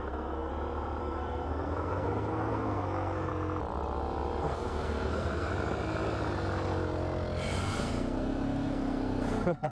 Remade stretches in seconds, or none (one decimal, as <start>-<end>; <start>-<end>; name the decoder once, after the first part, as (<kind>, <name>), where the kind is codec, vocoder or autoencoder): 0.0-0.5 (codec, SNAC); 1.0-3.3; 4.4-5.5; 7.6-9.7